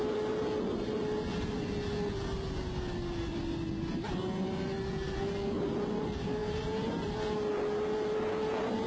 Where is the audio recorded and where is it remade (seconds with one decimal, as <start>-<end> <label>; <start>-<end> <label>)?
0.0-8.9 recorded